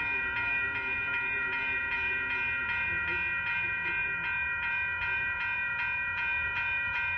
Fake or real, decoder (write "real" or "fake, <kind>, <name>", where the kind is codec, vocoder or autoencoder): fake, vocoder, Vocos